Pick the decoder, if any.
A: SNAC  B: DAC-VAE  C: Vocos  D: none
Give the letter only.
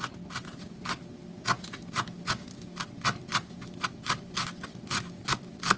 D